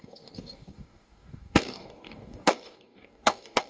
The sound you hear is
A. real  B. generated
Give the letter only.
B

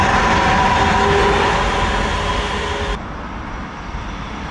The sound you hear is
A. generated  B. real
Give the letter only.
B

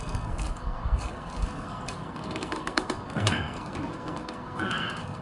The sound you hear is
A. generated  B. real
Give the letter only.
A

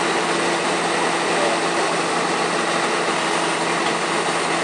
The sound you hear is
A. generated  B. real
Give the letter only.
B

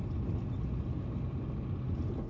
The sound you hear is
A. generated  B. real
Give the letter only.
B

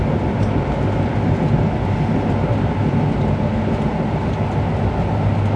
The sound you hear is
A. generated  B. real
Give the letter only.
B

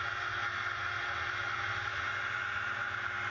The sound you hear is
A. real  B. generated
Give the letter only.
A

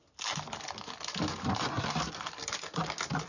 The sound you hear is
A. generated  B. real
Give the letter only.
B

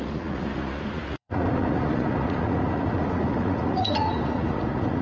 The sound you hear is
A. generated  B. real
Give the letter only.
A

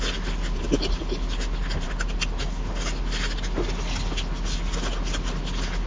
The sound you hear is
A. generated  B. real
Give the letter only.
B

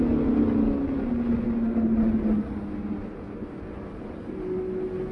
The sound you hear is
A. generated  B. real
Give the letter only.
B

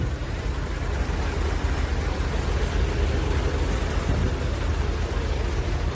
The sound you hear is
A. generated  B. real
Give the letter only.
B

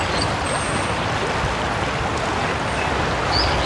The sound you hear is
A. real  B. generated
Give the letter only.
A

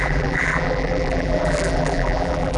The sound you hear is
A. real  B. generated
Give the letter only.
B